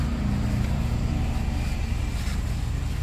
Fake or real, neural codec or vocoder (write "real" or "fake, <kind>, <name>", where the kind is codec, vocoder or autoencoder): real